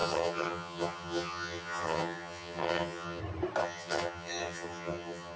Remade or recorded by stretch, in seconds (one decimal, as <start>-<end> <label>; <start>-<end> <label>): 0.0-3.2 remade; 3.2-3.6 recorded; 3.6-5.4 remade